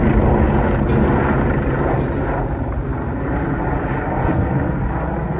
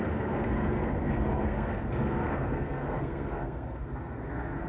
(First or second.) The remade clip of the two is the second